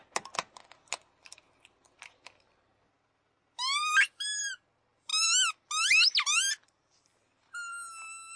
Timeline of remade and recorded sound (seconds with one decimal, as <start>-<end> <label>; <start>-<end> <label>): 0.0-8.4 recorded